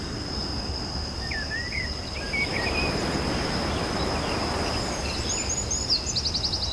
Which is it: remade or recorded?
recorded